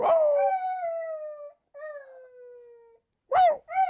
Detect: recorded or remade recorded